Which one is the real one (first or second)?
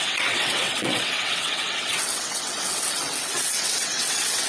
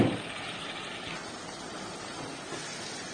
second